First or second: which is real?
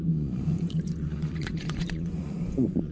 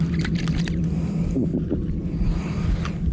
second